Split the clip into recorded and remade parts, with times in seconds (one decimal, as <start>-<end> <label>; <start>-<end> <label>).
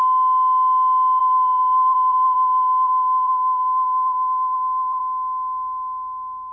0.0-1.2 recorded; 1.2-5.0 remade; 5.0-6.5 recorded